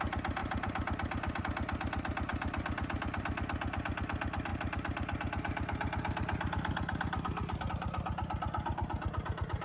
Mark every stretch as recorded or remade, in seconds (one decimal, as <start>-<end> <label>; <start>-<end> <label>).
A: 0.0-0.4 recorded; 0.4-1.4 remade; 1.4-2.3 recorded; 2.3-3.2 remade; 3.2-9.6 recorded